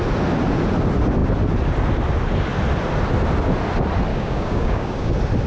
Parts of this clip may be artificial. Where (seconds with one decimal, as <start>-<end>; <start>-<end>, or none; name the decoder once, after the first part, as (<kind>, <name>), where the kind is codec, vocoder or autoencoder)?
4.1-5.1 (codec, DAC)